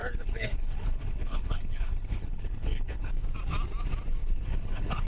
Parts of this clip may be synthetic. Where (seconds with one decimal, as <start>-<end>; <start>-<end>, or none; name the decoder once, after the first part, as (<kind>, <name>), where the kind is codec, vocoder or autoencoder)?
0.0-3.1 (codec, HILCodec); 4.2-5.1